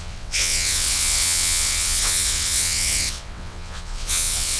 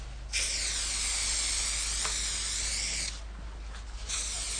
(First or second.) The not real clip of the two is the first